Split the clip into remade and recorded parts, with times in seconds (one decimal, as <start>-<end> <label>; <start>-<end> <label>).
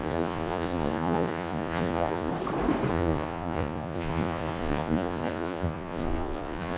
0.0-2.3 remade; 2.3-2.9 recorded; 2.9-6.8 remade